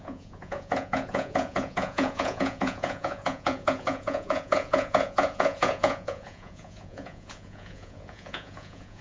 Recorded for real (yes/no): no